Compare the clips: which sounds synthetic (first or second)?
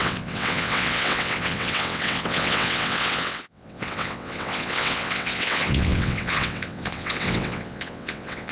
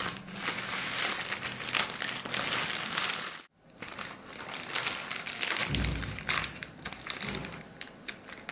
first